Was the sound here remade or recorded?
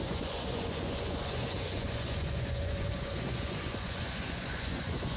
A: remade